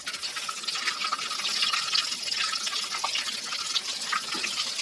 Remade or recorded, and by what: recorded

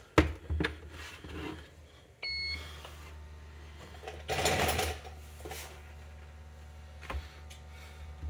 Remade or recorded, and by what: recorded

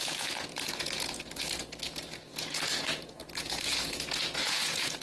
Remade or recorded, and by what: remade, vocoder, Vocos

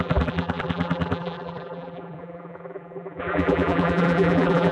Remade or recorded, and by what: remade, vocoder, BigVGAN v2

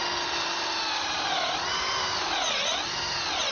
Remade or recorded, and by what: recorded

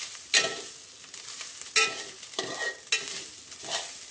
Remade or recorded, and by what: recorded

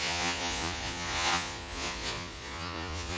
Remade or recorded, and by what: remade, vocoder, Vocos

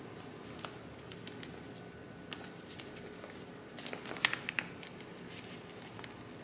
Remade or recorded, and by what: recorded